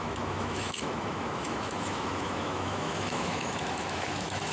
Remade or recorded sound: remade